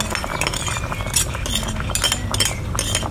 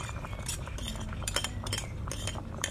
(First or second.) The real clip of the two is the first